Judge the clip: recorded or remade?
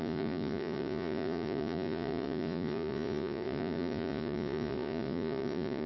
remade